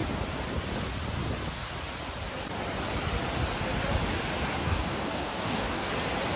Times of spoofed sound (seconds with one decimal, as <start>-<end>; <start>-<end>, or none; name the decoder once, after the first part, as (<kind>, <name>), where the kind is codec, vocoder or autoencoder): 4.6-5.9 (codec, DAC)